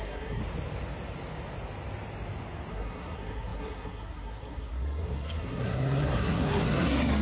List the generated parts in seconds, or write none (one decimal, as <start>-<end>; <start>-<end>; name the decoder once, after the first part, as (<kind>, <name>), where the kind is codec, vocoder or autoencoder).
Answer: 0.0-0.4 (codec, SNAC); 2.7-7.2